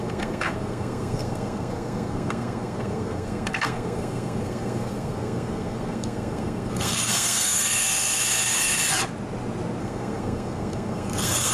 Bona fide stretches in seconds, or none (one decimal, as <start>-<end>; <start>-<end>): 8.8-9.8